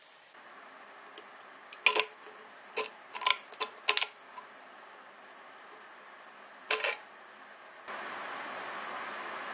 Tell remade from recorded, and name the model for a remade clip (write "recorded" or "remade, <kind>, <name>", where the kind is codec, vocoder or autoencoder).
recorded